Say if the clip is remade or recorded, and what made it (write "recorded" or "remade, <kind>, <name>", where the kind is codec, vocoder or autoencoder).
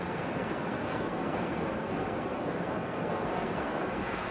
remade, codec, SNAC